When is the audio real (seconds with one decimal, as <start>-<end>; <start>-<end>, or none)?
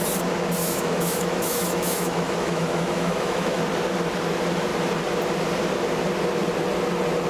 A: 0.0-0.6; 3.6-7.3